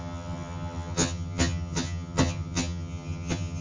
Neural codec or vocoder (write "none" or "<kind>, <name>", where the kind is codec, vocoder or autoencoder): vocoder, HiFi-GAN